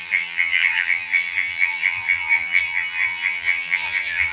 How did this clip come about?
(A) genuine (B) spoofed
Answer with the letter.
B